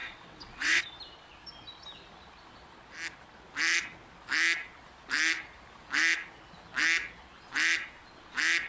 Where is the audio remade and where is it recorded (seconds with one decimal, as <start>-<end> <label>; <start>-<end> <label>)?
0.0-0.8 remade; 0.8-8.7 recorded